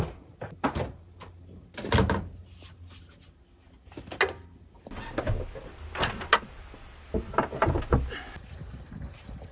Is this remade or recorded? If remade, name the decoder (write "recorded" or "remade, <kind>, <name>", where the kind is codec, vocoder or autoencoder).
recorded